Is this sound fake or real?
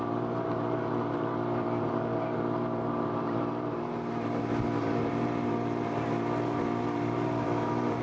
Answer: fake